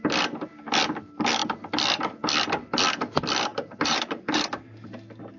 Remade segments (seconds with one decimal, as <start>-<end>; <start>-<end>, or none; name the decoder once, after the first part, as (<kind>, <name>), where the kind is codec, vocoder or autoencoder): 3.5-4.5 (vocoder, BigVGAN v2)